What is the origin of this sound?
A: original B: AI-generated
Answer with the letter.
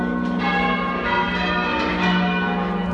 A